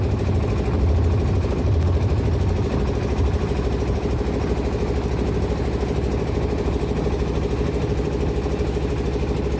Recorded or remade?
recorded